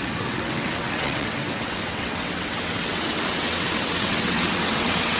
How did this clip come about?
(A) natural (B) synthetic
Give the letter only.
B